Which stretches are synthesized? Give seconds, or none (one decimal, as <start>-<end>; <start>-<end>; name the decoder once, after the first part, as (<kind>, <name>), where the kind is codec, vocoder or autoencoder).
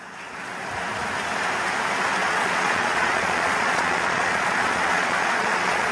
2.2-5.9 (vocoder, Vocos)